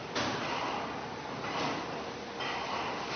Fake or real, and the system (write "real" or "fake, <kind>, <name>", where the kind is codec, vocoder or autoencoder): real